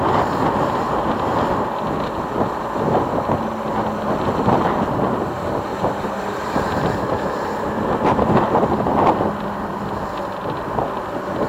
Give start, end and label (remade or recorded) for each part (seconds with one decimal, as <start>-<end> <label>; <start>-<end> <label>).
0.0-5.7 recorded; 5.7-8.2 remade; 8.2-11.5 recorded